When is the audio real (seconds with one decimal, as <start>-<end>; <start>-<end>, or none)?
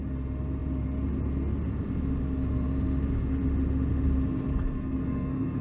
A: 0.0-4.5